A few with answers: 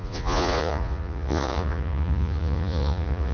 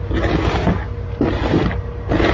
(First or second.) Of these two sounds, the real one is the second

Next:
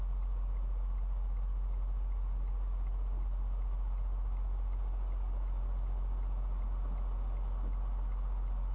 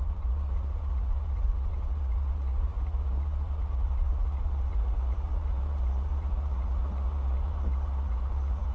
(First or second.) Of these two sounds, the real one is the first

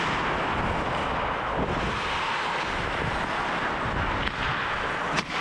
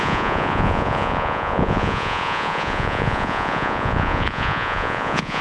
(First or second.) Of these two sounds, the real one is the first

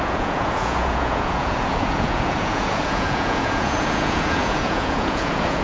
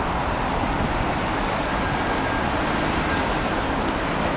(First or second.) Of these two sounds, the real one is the second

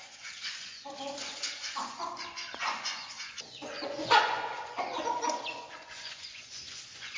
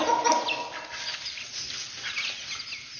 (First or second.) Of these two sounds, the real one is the second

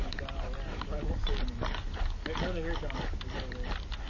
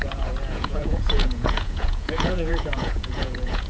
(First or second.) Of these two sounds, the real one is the first